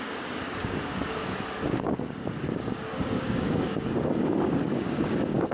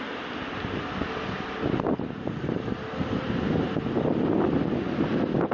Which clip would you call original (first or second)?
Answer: second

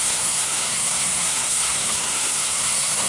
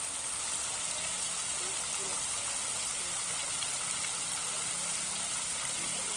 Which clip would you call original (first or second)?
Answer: second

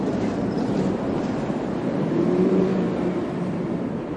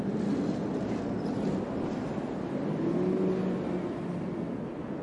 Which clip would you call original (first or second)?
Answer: second